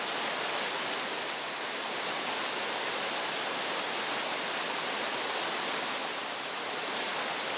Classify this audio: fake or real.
real